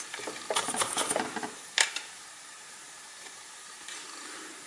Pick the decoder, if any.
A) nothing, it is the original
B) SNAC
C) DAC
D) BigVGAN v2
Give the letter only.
D